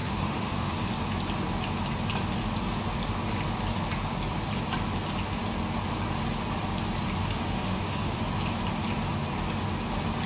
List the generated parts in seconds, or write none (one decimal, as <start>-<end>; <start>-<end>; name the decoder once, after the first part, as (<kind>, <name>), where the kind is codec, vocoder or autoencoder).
0.0-0.7 (autoencoder, DAC-VAE); 7.2-8.2